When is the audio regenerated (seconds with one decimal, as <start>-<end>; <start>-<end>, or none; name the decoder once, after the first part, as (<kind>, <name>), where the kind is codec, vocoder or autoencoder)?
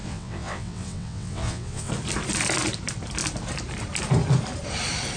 0.0-1.9 (vocoder, WaveNeXt)